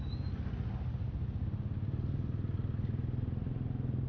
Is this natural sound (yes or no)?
yes